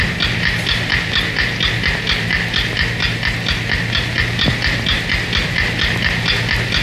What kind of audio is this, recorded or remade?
recorded